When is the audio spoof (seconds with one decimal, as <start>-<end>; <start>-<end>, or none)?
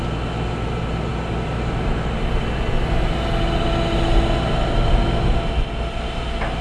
none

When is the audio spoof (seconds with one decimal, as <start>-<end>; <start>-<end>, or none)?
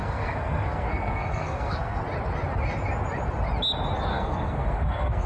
0.0-2.0; 4.1-5.3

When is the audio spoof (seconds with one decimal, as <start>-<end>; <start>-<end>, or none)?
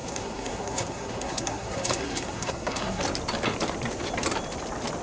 0.0-3.0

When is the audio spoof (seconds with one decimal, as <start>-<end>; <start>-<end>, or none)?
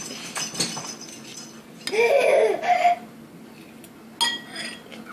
none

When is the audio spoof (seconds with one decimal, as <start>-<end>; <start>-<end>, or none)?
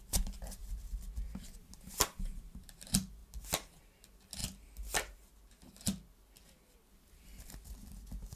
none